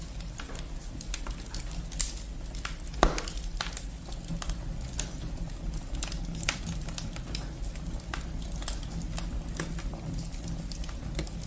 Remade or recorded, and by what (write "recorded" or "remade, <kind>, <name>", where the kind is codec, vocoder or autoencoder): recorded